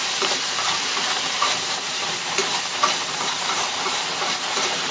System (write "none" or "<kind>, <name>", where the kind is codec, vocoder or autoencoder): vocoder, BigVGAN v2